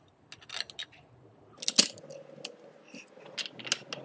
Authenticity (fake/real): real